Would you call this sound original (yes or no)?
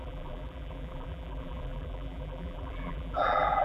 no